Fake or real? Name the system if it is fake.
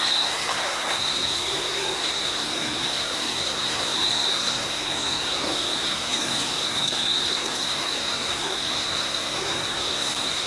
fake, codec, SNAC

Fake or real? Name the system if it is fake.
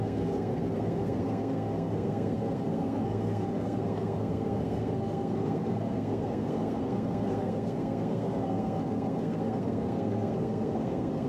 fake, codec, SNAC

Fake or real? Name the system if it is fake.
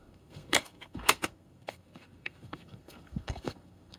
fake, codec, SNAC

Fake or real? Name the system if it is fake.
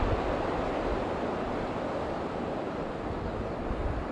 real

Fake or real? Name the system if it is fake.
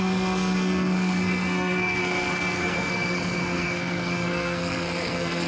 fake, codec, SNAC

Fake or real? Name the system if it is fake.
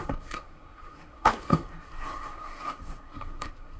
fake, codec, SNAC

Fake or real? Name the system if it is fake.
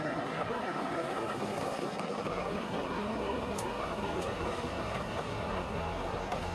fake, codec, SNAC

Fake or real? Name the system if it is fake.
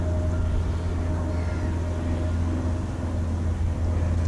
real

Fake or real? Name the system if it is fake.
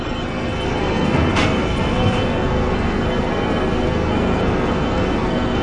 fake, codec, SNAC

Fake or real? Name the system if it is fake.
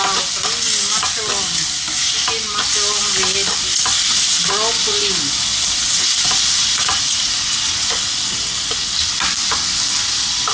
real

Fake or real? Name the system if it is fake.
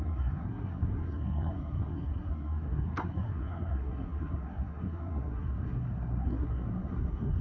fake, codec, SNAC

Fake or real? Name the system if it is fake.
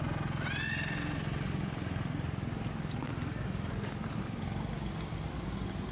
real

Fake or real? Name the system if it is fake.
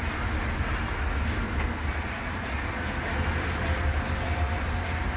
real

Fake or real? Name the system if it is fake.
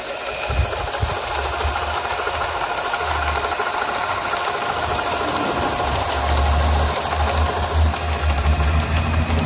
real